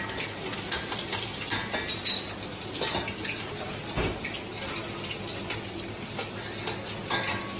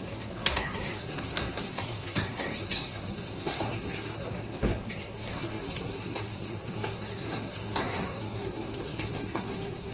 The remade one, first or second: second